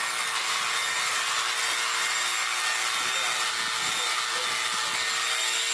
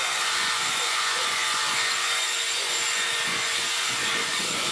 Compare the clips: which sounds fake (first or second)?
second